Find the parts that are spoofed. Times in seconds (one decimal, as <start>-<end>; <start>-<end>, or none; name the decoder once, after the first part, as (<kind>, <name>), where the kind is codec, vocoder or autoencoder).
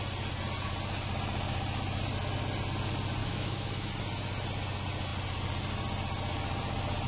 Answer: 3.2-3.9 (autoencoder, DAC-VAE)